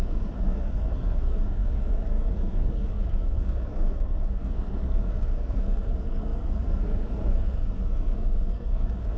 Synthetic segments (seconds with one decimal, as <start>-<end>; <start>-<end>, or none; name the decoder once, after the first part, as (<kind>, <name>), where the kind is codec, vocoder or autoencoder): 0.0-9.2 (codec, SNAC)